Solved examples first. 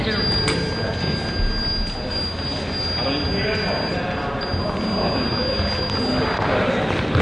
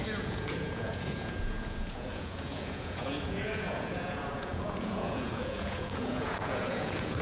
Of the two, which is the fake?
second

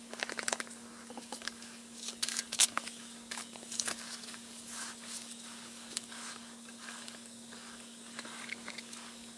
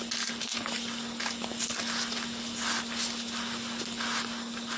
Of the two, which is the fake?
first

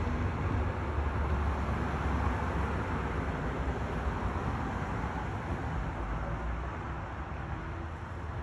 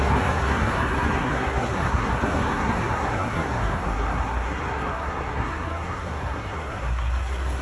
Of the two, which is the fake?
second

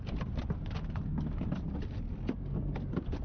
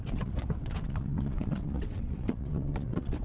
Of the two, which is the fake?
second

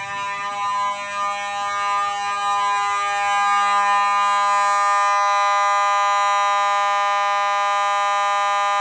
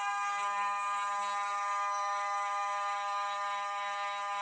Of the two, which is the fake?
second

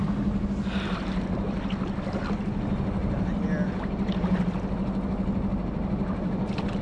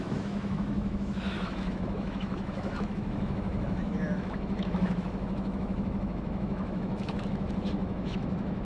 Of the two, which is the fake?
second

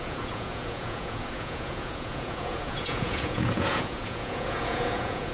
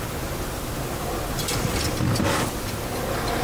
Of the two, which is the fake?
first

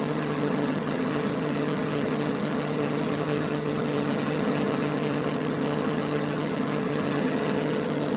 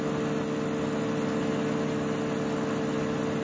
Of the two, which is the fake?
first